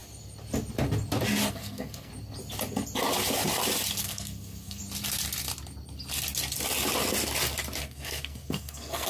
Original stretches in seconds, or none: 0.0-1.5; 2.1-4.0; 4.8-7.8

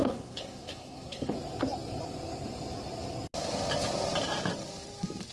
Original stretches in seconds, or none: 1.3-5.3

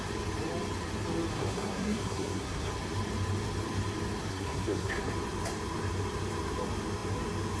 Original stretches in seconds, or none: 0.0-1.3; 2.7-4.3; 5.1-7.6

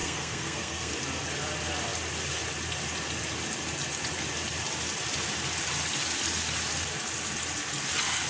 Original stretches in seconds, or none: 0.9-8.3